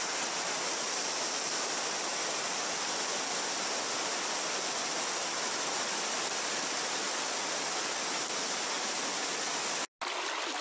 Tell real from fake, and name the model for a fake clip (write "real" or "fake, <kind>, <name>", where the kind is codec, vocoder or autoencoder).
real